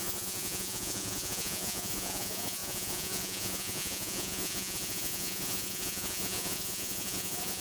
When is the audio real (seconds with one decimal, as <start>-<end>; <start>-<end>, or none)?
none